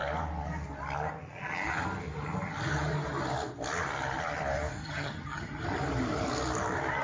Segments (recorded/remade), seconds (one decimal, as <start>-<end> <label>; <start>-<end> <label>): 0.0-4.8 recorded; 4.8-5.6 remade; 5.6-7.0 recorded